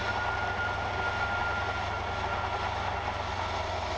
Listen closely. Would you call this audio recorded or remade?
recorded